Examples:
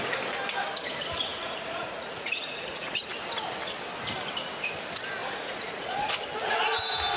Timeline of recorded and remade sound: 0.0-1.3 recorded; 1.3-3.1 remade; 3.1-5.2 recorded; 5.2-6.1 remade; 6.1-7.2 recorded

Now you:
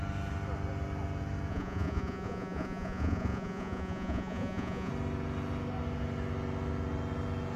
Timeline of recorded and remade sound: 0.0-1.5 recorded; 1.5-4.9 remade; 4.9-7.6 recorded